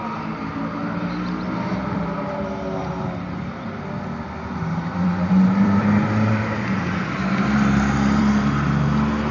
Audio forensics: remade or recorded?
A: remade